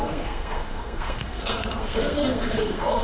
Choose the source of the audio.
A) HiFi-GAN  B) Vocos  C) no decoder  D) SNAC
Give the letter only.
D